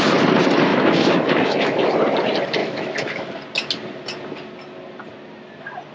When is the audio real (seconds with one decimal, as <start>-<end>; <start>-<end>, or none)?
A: 0.0-0.7; 1.9-2.6; 3.3-5.9